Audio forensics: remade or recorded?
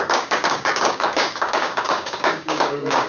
remade